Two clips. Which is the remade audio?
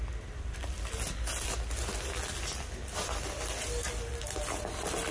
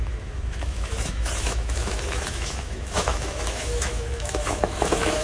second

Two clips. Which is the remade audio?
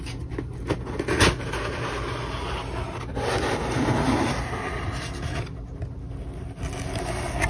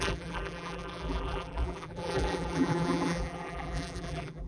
second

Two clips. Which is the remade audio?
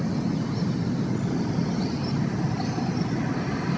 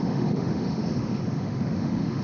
second